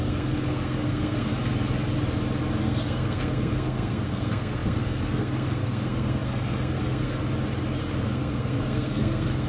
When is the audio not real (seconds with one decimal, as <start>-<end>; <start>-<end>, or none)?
0.0-1.3; 2.6-7.2; 7.8-9.5